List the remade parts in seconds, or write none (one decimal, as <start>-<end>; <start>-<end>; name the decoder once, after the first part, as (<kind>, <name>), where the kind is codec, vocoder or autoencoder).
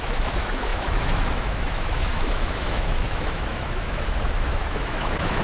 0.0-5.4 (autoencoder, DAC-VAE)